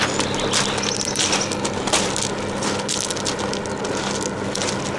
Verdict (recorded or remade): recorded